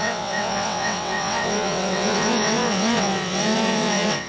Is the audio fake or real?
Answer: fake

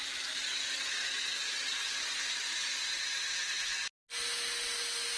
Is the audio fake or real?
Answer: real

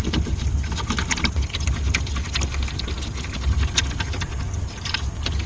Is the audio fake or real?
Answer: real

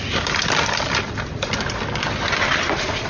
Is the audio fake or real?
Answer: real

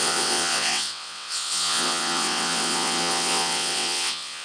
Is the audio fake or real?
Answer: fake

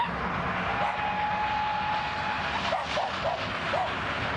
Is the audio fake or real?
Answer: real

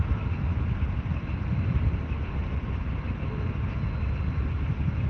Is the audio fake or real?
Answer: real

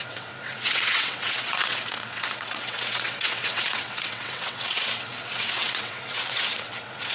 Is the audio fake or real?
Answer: fake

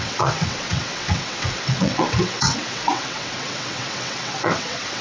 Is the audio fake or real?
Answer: fake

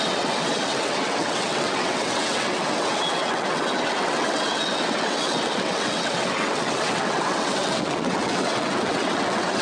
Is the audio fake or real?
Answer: fake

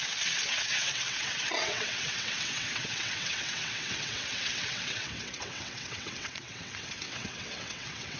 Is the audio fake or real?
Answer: fake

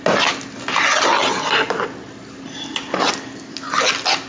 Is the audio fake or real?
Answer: real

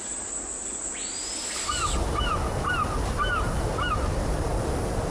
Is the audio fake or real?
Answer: real